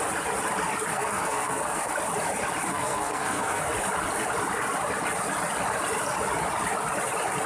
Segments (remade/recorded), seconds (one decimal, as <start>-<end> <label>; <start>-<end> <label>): 0.0-0.9 recorded; 0.9-1.9 remade; 1.9-2.7 recorded; 2.7-3.6 remade; 3.6-7.5 recorded